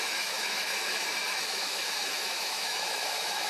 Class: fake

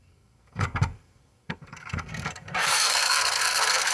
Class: fake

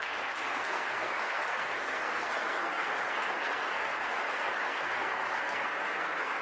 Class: fake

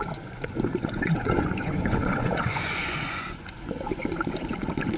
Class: fake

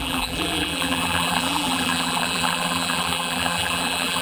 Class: fake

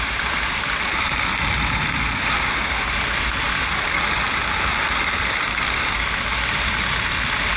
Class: fake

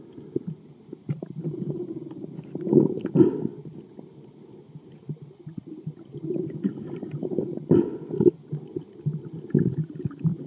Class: fake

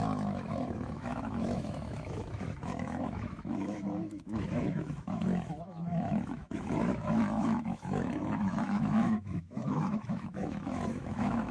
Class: fake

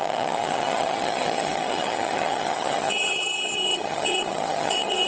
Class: fake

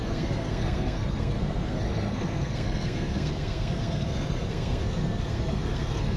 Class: fake